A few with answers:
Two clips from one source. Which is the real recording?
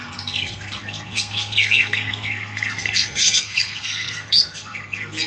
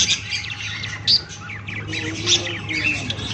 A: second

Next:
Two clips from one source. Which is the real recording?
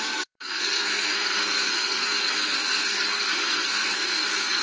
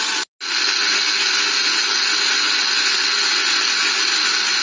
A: second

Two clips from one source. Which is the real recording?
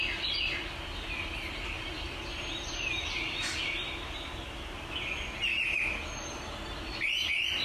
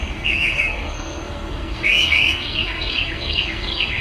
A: first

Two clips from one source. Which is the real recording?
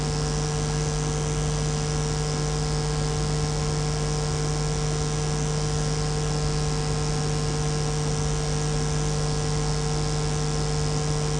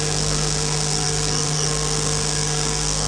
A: first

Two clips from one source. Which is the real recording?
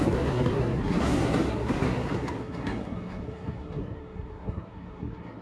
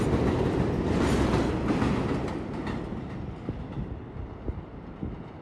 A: second